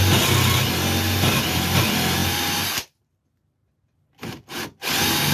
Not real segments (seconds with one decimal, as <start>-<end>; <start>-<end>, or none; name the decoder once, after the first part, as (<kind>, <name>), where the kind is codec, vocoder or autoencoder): none